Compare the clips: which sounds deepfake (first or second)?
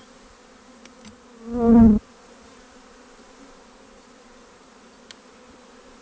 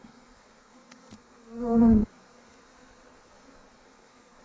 second